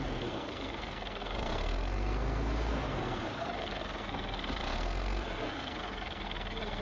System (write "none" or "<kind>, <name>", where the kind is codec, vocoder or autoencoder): codec, SNAC